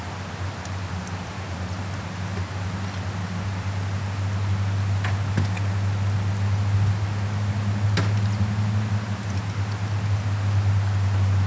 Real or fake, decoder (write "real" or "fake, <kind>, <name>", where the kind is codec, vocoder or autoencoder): real